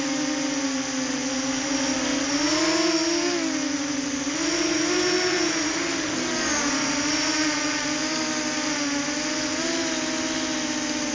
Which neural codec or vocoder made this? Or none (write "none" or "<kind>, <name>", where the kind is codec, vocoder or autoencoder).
none